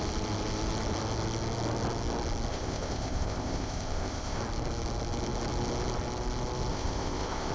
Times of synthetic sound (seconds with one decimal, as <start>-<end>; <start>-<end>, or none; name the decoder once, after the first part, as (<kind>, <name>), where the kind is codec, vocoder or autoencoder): 2.5-4.4 (codec, ZipCodec); 6.7-7.5